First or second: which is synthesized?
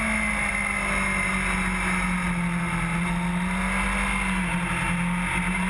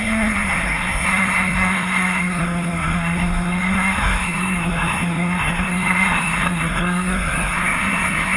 second